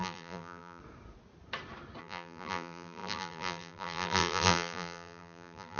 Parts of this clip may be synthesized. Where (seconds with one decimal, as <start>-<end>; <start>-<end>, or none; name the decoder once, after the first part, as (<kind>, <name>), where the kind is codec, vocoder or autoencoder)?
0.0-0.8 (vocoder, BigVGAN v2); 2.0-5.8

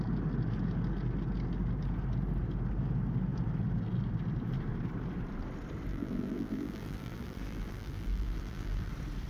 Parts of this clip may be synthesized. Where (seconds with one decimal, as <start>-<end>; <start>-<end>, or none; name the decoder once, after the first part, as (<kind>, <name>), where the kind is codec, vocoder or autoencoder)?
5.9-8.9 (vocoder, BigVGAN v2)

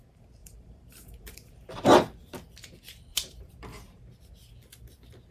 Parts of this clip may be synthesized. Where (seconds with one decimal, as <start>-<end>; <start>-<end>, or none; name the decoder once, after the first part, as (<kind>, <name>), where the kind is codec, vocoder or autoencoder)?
0.4-2.3 (vocoder, BigVGAN v2); 3.1-4.0

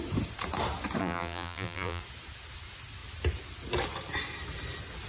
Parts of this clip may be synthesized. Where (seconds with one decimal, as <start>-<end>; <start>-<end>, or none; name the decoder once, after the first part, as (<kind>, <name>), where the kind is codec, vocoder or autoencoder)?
1.0-2.0 (vocoder, BigVGAN v2)

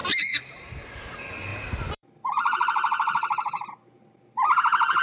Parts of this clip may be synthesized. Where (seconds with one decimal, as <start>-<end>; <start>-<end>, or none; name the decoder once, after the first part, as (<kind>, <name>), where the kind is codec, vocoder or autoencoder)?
0.0-1.0 (vocoder, BigVGAN v2); 1.5-3.7

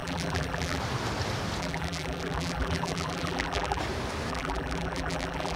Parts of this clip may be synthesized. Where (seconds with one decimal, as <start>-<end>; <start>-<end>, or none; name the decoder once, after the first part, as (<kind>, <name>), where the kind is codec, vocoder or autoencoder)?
0.0-0.8 (vocoder, BigVGAN v2); 1.6-3.8; 4.3-5.6

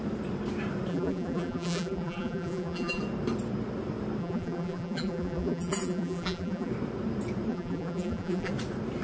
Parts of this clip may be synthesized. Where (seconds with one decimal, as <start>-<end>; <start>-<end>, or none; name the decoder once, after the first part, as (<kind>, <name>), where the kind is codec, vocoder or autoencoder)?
0.9-3.0 (vocoder, BigVGAN v2); 4.2-6.7; 7.5-8.5